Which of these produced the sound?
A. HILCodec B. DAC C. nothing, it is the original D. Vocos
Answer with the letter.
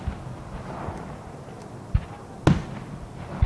C